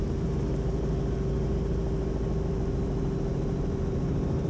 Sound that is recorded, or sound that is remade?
recorded